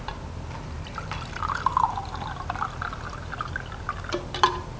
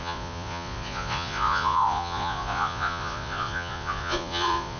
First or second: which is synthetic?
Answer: second